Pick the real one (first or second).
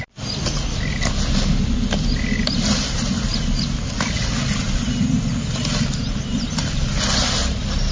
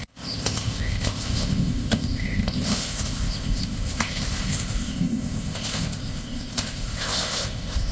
first